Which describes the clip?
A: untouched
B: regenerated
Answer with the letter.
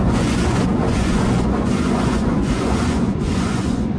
B